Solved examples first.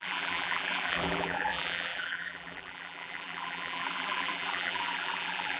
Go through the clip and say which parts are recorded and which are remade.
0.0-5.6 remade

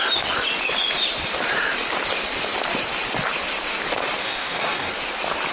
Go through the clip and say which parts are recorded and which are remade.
0.0-4.2 recorded; 4.2-4.9 remade; 4.9-5.5 recorded

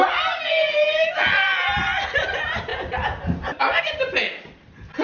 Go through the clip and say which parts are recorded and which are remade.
0.0-5.0 recorded

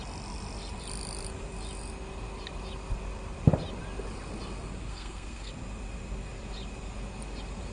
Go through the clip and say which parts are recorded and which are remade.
0.0-4.9 recorded; 4.9-5.5 remade; 5.5-7.7 recorded

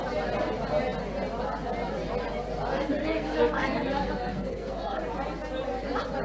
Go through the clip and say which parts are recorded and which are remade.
0.0-3.0 recorded; 3.0-5.0 remade; 5.0-6.2 recorded

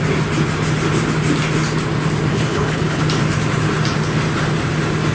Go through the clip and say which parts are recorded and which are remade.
0.0-2.3 recorded; 2.3-3.0 remade; 3.0-5.1 recorded

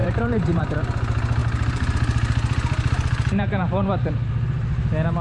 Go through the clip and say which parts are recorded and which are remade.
0.0-0.6 remade; 0.6-1.4 recorded; 1.4-4.1 remade; 4.1-5.2 recorded